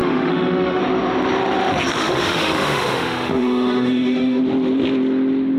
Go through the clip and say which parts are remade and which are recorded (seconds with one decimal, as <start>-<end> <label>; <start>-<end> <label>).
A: 0.0-0.8 remade; 0.8-2.0 recorded; 2.0-4.4 remade; 4.4-5.6 recorded